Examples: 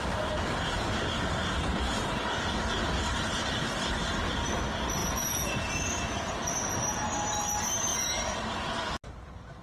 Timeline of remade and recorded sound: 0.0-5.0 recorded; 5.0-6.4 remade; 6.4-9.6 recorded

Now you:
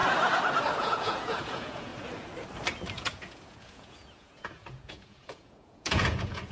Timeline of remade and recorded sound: 0.0-0.8 recorded; 0.8-1.9 remade; 1.9-2.9 recorded; 2.9-6.5 remade

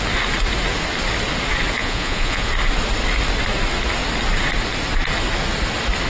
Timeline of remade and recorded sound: 0.0-1.8 recorded; 1.8-2.5 remade; 2.5-6.1 recorded

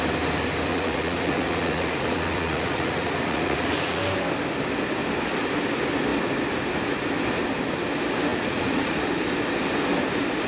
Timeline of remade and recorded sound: 0.0-0.7 recorded; 0.7-4.0 remade; 4.0-8.3 recorded; 8.3-9.0 remade; 9.0-10.5 recorded

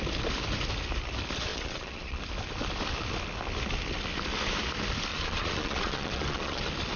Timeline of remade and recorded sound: 0.0-1.5 recorded; 1.5-2.2 remade; 2.2-5.1 recorded; 5.1-6.6 remade; 6.6-7.0 recorded

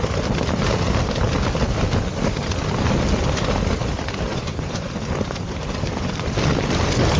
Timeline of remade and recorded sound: 0.0-4.3 recorded; 4.3-4.9 remade; 4.9-7.2 recorded